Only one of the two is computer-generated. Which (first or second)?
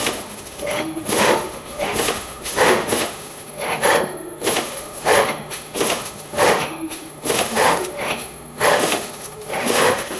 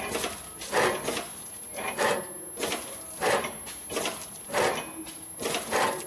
first